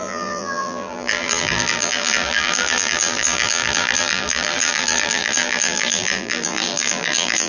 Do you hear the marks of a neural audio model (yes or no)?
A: yes